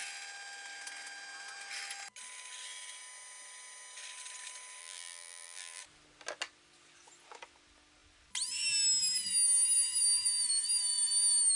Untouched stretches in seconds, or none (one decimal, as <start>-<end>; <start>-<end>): 0.0-4.8; 5.8-11.6

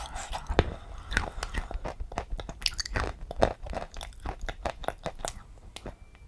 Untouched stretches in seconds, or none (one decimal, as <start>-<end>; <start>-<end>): 0.0-6.3

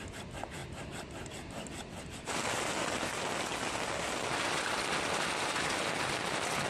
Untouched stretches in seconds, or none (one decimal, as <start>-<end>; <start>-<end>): 0.0-6.7

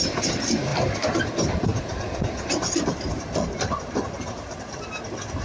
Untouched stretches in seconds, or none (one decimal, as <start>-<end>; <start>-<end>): 0.0-0.7; 1.2-1.7; 4.9-5.4

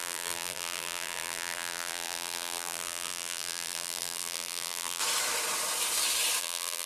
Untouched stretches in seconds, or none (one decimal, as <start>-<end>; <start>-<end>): 5.0-6.4